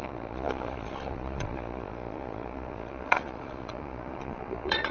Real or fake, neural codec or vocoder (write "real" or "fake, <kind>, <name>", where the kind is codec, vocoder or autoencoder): fake, vocoder, Vocos